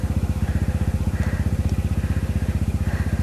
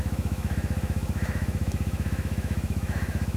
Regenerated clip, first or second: second